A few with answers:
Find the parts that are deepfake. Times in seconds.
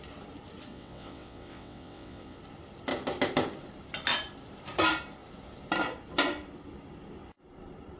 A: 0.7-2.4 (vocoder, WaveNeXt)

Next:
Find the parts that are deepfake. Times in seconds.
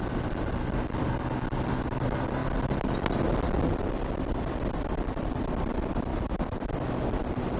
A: none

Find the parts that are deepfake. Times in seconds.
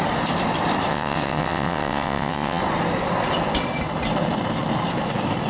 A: 0.9-2.6 (vocoder, WaveNeXt)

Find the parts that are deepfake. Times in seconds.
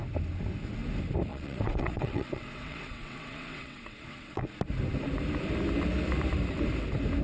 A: 1.3-4.4 (vocoder, WaveNeXt)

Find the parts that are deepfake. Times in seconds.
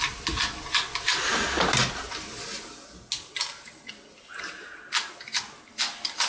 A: none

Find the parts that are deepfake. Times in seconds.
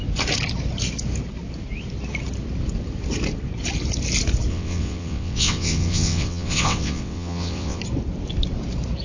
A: 4.5-7.8 (vocoder, WaveNeXt)